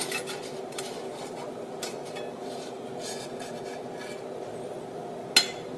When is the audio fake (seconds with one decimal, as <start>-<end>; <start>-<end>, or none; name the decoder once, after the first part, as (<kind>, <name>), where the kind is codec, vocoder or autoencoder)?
4.5-5.2 (vocoder, BigVGAN v2)